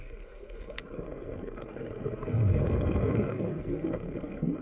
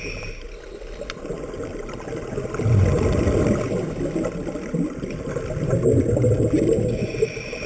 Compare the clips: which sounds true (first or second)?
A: second